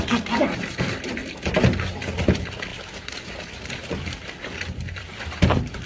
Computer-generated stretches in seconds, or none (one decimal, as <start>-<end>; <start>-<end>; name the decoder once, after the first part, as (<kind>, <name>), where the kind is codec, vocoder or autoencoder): 0.0-1.2 (vocoder, BigVGAN v2); 2.2-5.9